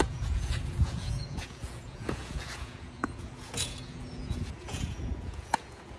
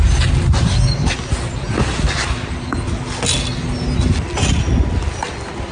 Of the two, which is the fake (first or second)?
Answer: first